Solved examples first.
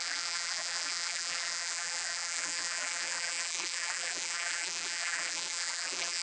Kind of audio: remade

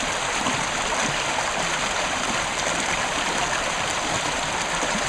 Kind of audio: remade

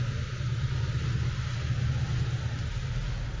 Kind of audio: recorded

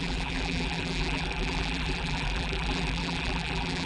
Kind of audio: remade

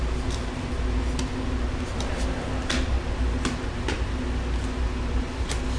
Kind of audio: recorded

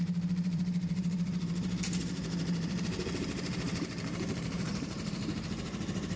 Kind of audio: remade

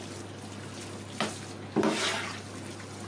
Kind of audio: recorded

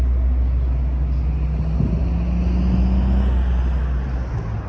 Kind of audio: recorded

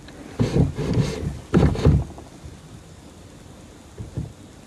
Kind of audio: recorded